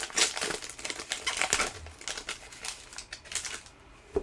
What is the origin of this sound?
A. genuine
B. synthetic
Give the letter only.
A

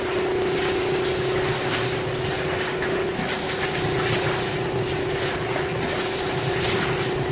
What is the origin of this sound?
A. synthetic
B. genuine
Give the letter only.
B